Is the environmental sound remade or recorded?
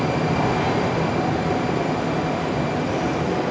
recorded